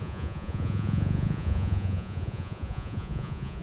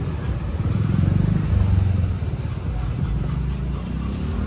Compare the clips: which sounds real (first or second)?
second